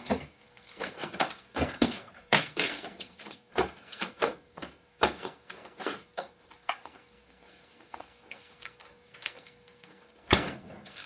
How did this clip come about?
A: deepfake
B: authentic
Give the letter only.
A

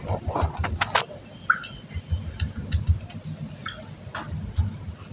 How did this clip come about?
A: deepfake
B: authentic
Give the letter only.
B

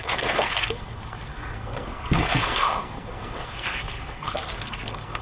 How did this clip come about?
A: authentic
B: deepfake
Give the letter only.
B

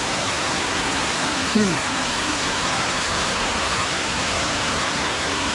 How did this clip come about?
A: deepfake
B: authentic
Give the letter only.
A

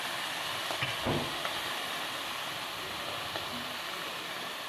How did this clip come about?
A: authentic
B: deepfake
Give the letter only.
A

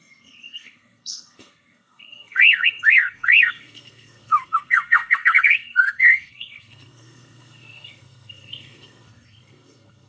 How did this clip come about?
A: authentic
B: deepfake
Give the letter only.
B